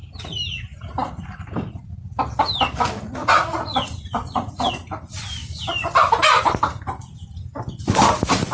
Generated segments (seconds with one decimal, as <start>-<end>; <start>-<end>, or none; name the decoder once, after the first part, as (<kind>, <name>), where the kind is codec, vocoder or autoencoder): 3.2-4.7 (vocoder, Vocos)